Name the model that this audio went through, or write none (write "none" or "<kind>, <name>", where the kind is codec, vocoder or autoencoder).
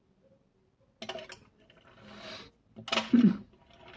none